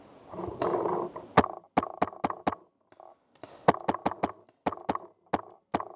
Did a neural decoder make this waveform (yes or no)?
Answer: no